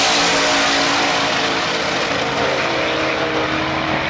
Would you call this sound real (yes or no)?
yes